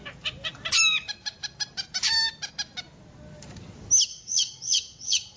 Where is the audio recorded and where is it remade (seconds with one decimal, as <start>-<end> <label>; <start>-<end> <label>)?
0.0-4.1 recorded; 4.1-5.4 remade